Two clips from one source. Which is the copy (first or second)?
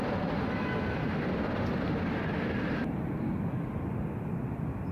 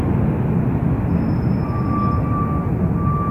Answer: first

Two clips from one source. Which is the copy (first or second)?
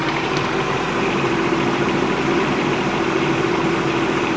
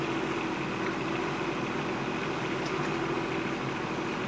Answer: first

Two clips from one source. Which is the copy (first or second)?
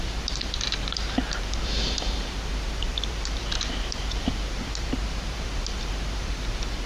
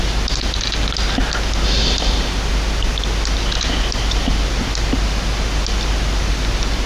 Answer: first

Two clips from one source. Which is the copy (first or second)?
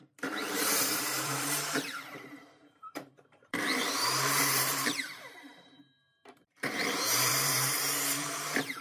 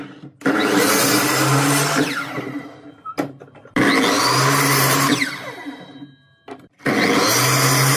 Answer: first